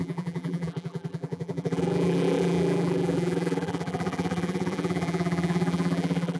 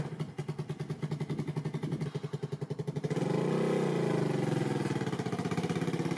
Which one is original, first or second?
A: second